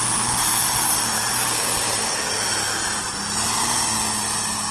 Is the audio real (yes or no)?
yes